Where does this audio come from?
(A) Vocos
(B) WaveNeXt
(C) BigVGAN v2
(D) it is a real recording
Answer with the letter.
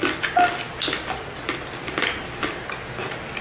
D